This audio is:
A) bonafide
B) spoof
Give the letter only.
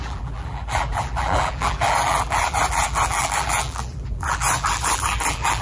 B